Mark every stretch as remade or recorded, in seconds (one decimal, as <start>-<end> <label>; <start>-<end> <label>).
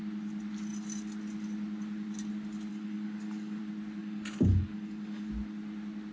0.0-2.7 recorded; 2.7-3.6 remade; 3.6-4.0 recorded; 4.0-5.3 remade; 5.3-6.1 recorded